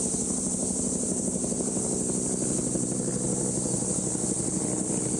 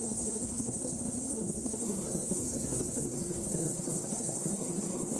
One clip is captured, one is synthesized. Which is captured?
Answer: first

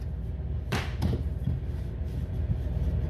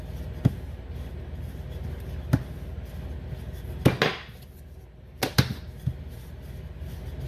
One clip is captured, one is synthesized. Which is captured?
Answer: second